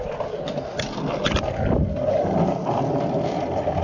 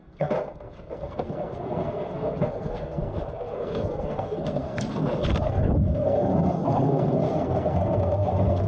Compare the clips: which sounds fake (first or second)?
second